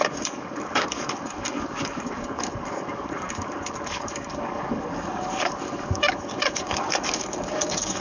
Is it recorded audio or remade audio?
remade